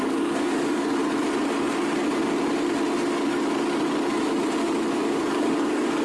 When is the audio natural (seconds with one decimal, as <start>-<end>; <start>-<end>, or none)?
1.0-4.6